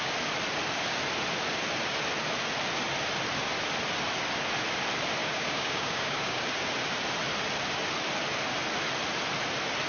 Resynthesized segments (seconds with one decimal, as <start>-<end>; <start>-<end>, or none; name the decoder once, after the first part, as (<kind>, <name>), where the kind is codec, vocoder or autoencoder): 5.2-6.4 (codec, DAC)